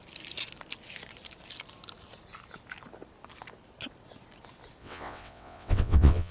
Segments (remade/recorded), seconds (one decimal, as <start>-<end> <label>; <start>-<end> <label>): 0.0-4.8 recorded; 4.8-6.3 remade